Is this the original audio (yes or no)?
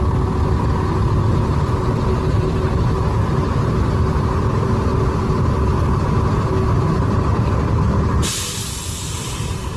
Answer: no